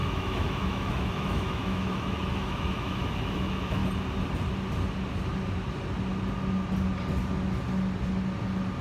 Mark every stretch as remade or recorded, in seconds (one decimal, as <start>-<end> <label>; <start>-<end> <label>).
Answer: 0.0-3.8 remade; 3.8-8.8 recorded